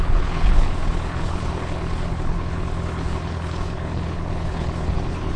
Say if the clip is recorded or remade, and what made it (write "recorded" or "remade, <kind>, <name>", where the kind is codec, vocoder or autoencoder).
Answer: remade, codec, HILCodec